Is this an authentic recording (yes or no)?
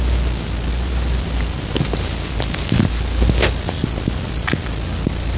yes